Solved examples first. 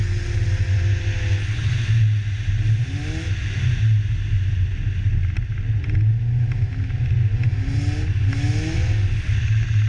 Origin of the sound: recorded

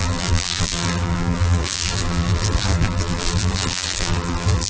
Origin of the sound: remade